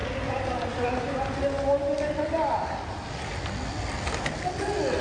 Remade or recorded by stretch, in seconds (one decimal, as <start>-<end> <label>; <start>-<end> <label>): 0.0-5.0 recorded